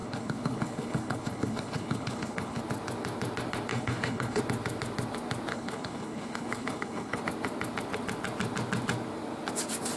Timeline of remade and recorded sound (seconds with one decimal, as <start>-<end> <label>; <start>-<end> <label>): 0.0-2.6 remade; 2.6-3.7 recorded; 3.7-4.4 remade; 4.4-5.5 recorded; 5.5-7.2 remade; 7.2-10.0 recorded